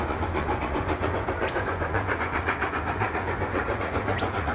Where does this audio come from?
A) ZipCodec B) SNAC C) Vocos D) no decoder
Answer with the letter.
C